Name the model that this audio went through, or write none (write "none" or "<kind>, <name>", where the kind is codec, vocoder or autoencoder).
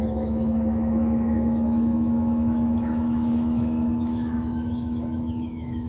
autoencoder, DAC-VAE